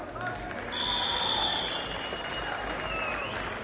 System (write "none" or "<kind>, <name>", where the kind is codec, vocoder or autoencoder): none